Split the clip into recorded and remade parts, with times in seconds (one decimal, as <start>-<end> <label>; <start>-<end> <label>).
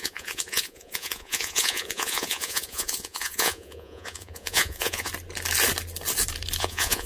0.0-5.1 remade; 5.1-6.6 recorded; 6.6-7.1 remade